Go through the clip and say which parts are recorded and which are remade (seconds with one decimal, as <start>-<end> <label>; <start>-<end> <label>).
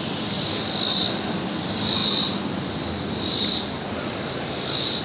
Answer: 0.0-5.0 recorded